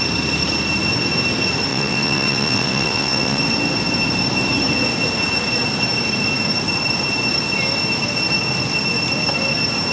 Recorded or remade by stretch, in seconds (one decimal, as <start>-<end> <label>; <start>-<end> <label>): 0.0-1.7 recorded; 1.7-3.4 remade; 3.4-9.9 recorded